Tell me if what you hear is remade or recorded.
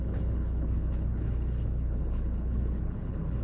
remade